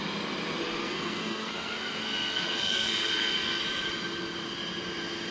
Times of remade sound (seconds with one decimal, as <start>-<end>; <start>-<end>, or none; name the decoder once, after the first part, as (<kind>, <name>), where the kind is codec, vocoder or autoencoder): 0.8-3.6 (codec, SNAC)

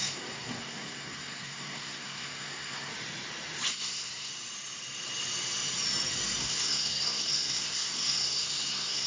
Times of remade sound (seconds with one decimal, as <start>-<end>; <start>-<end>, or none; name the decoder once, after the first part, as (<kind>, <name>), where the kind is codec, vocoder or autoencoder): 0.0-2.9 (codec, SNAC); 3.7-4.3; 6.4-9.1

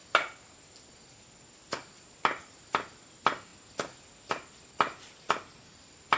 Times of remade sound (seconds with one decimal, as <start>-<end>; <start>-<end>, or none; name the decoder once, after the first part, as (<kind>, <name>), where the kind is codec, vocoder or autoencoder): none

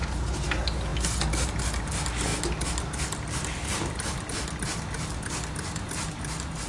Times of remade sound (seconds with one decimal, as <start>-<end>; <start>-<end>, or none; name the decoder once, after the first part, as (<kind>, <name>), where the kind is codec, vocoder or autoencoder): none